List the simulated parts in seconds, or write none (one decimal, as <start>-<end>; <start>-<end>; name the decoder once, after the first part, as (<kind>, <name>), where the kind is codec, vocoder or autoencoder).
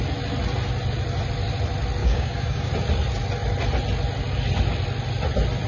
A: 2.0-2.7 (codec, DAC)